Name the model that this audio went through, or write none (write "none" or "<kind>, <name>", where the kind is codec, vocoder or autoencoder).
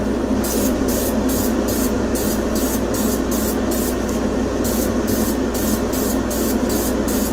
none